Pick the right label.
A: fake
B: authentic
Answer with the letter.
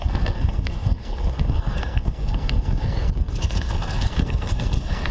A